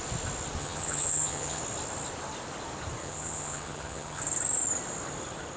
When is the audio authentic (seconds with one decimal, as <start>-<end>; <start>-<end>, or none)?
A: 0.0-0.6; 1.6-3.0; 4.2-5.6